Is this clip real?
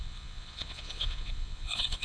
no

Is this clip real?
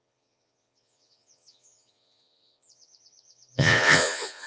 no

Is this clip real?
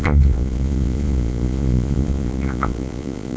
no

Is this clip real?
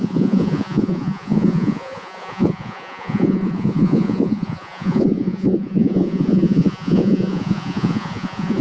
no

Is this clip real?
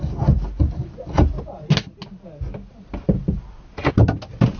yes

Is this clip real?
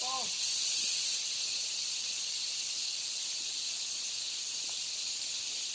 yes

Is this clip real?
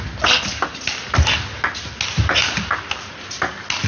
yes